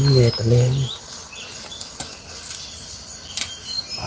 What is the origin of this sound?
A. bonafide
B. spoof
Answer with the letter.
A